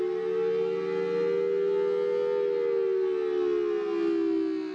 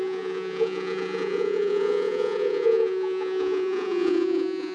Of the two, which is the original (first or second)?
first